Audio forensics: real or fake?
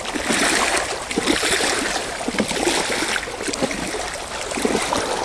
real